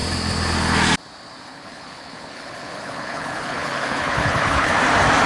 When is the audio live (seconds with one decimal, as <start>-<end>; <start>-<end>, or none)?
0.0-1.5; 4.7-5.3

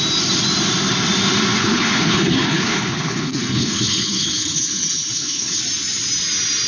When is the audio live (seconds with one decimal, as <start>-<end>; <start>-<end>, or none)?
0.0-1.6; 5.6-6.7

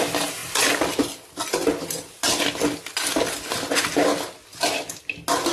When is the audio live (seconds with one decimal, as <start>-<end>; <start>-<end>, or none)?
0.0-5.5